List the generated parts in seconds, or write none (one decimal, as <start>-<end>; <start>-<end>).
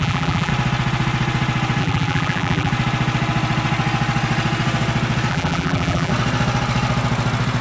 0.0-0.5; 1.8-2.7; 5.3-6.1